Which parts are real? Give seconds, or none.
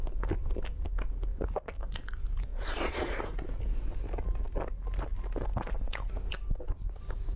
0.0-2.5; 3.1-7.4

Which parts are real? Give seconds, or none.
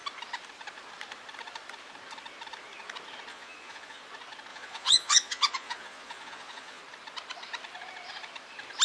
0.0-3.3; 4.0-4.5; 6.8-8.8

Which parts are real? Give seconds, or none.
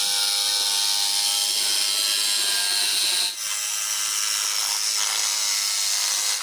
0.0-6.4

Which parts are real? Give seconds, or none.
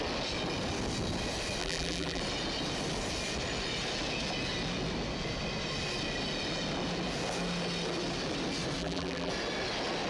0.0-1.6; 2.2-8.8; 9.3-10.1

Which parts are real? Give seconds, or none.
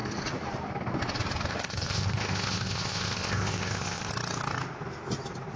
0.0-1.5; 4.1-5.6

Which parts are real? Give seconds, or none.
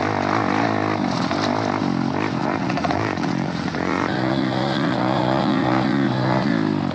0.0-2.4; 6.5-6.9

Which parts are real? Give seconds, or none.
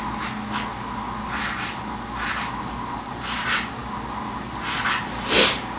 0.0-5.8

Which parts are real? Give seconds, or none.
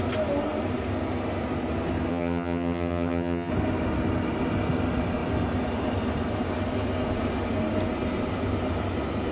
0.0-2.1; 3.5-9.3